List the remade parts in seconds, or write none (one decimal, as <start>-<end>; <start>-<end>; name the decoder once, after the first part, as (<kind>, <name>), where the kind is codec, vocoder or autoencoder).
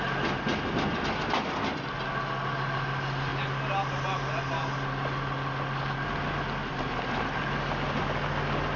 none